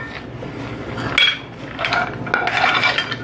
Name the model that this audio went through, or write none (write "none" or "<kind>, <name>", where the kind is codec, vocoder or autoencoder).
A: none